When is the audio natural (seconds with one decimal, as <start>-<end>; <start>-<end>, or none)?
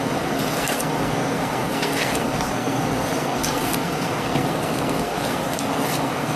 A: none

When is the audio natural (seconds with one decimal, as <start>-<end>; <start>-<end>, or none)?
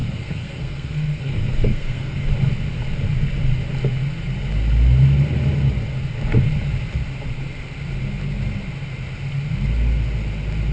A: 2.3-10.7